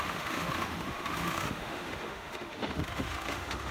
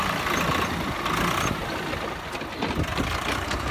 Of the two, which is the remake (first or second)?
first